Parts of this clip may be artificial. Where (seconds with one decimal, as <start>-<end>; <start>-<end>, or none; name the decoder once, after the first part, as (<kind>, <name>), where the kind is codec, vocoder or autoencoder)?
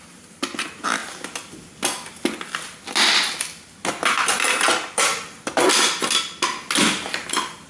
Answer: none